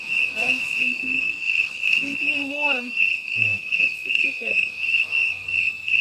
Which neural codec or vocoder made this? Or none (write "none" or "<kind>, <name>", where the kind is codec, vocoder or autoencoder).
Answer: codec, SNAC